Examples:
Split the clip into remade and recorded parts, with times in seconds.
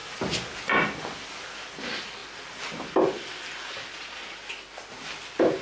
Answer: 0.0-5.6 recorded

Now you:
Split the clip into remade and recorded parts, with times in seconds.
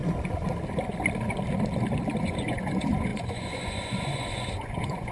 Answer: 0.0-2.2 recorded; 2.2-5.1 remade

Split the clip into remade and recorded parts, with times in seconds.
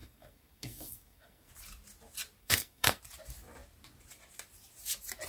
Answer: 0.0-1.5 remade; 1.5-2.4 recorded; 2.4-3.0 remade; 3.0-5.3 recorded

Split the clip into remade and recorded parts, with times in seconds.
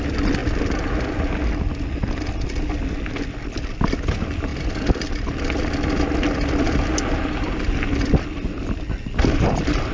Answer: 0.0-0.4 remade; 0.4-3.1 recorded; 3.1-9.9 remade